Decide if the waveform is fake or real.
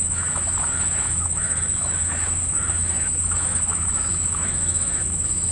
fake